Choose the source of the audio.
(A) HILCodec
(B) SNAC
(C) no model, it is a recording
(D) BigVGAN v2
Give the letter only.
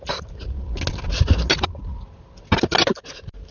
C